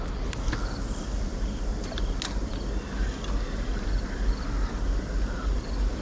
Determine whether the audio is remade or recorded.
recorded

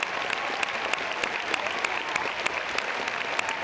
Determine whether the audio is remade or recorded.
recorded